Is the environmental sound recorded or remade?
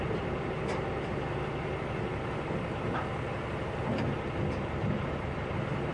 recorded